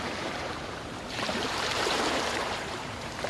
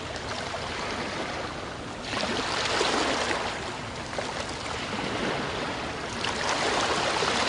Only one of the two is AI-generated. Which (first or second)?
first